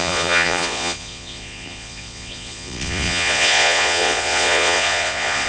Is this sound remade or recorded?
remade